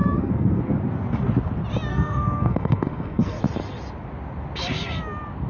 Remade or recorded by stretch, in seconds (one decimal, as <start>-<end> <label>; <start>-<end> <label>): 0.0-0.6 remade; 0.6-1.9 recorded; 1.9-3.4 remade; 3.4-5.5 recorded